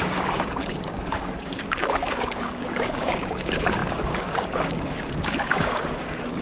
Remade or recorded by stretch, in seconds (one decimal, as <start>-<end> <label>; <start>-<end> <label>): 0.0-6.4 remade